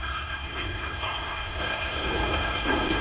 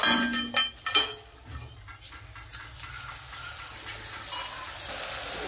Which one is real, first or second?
second